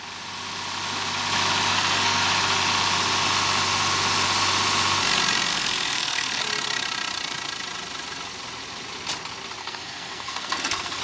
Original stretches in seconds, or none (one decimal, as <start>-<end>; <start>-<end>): 0.0-1.7; 2.2-5.5; 6.4-9.6